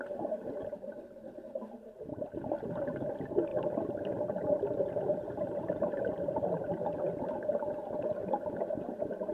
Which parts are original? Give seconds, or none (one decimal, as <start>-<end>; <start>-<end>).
0.0-3.5; 7.5-8.2